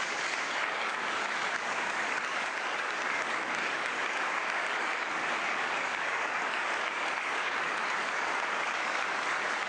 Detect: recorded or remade remade